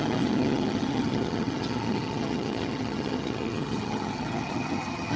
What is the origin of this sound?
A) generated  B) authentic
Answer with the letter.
A